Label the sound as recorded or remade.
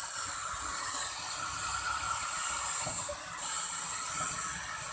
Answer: recorded